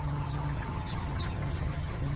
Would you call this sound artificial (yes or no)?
yes